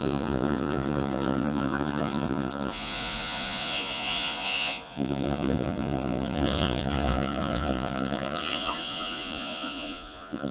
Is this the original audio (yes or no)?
no